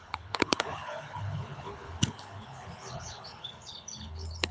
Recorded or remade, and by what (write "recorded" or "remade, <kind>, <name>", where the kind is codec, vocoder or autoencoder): remade, codec, HILCodec